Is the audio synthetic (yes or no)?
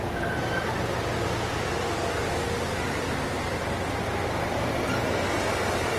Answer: no